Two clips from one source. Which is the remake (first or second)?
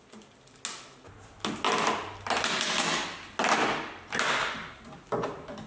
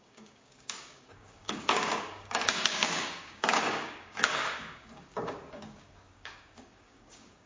second